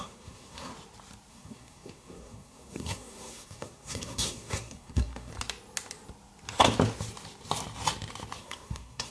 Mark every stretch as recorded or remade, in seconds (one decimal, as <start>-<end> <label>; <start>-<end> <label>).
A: 0.0-0.7 remade; 0.7-1.3 recorded; 1.3-5.3 remade; 5.3-8.4 recorded; 8.4-9.1 remade